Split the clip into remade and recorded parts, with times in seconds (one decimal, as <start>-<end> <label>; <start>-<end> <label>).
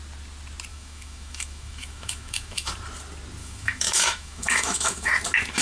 0.0-0.7 recorded; 0.7-2.7 remade; 2.7-3.4 recorded; 3.4-5.1 remade; 5.1-5.6 recorded